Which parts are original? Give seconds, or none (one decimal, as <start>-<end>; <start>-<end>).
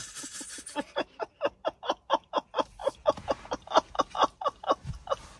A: 0.0-5.4